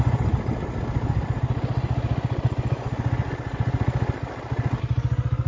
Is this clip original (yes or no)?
yes